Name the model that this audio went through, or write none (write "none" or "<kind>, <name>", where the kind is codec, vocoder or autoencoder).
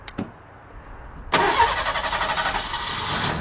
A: none